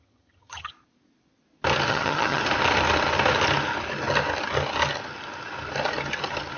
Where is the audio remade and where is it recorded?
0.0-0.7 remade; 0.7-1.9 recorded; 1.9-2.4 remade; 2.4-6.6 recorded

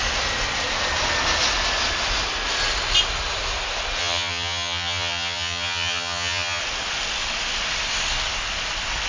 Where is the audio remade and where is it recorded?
0.0-4.0 recorded; 4.0-6.6 remade; 6.6-9.1 recorded

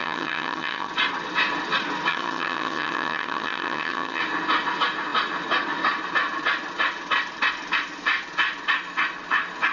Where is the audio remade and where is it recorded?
0.0-0.9 remade; 0.9-2.1 recorded; 2.1-4.2 remade; 4.2-9.7 recorded

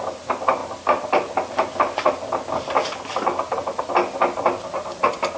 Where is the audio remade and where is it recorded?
0.0-5.4 recorded